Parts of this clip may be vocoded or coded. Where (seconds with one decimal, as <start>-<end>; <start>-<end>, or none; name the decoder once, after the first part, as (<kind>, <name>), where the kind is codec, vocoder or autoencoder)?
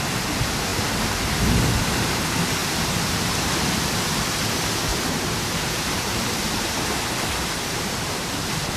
4.9-8.8 (vocoder, BigVGAN v2)